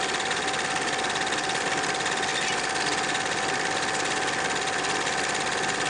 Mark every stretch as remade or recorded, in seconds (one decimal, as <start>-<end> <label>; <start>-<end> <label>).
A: 0.0-5.9 recorded